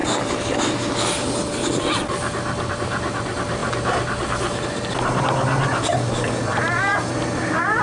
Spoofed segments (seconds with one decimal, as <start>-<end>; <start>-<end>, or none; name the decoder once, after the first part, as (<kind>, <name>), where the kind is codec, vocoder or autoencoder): none